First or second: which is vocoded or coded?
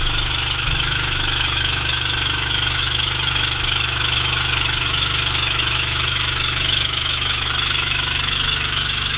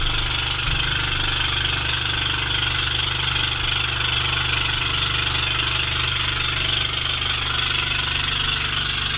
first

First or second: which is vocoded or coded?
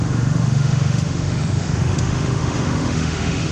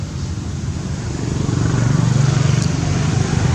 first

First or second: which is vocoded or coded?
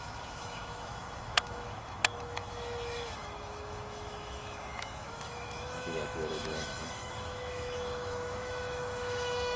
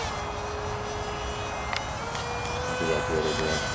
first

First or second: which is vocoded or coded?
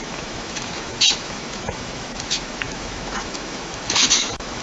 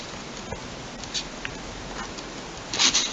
first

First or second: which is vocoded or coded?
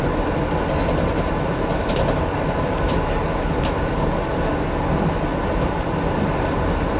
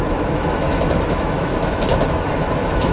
second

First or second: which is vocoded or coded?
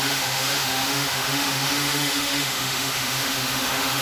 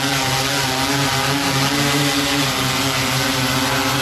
first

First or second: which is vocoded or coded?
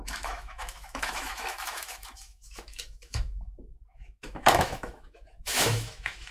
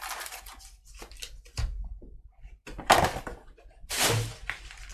first